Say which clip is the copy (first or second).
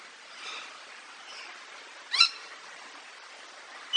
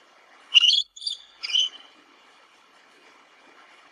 second